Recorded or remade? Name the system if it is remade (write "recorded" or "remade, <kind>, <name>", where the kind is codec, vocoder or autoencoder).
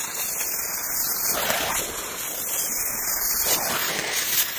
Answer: recorded